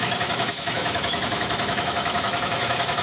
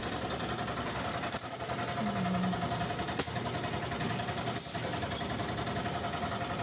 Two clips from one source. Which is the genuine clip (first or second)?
second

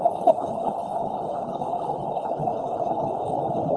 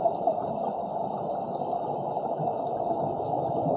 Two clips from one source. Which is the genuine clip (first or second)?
second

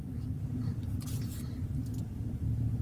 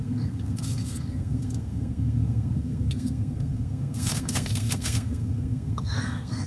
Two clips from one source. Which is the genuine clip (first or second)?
first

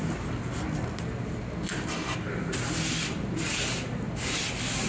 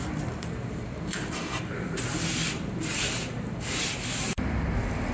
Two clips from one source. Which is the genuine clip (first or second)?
first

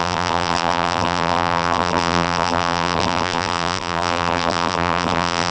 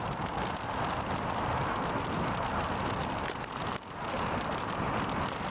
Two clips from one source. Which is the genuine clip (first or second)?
second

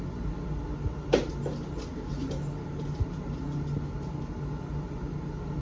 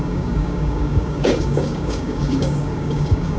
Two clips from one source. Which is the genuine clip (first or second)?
first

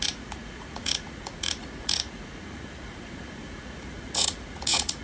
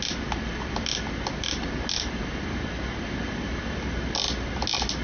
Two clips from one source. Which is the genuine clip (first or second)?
second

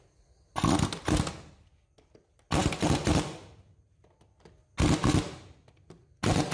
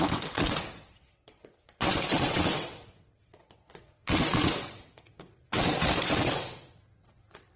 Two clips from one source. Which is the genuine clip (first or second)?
first